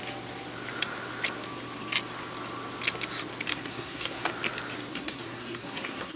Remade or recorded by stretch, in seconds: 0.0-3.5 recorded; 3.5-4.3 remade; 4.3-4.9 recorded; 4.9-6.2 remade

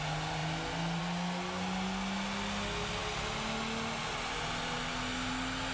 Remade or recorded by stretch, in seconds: 0.0-5.7 recorded

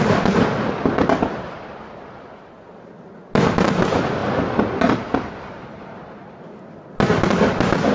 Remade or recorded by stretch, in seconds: 0.0-7.9 recorded

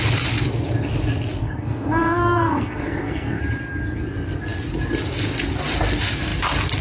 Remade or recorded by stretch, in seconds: 0.0-1.4 recorded; 1.4-3.4 remade; 3.4-6.8 recorded

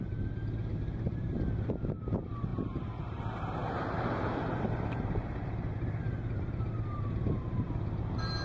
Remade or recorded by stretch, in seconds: 0.0-2.5 recorded; 2.5-3.2 remade; 3.2-3.6 recorded; 3.6-7.7 remade; 7.7-8.4 recorded

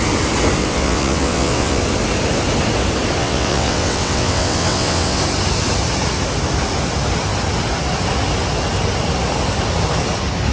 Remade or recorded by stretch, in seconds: 0.0-0.6 recorded; 0.6-1.8 remade; 1.8-3.2 recorded; 3.2-5.2 remade; 5.2-10.5 recorded

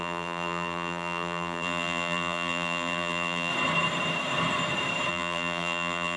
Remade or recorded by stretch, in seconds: 0.0-3.5 remade; 3.5-5.1 recorded; 5.1-6.2 remade